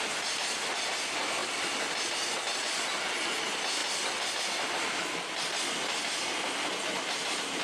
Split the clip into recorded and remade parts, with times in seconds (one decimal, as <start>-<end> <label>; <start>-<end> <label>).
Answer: 0.0-7.6 recorded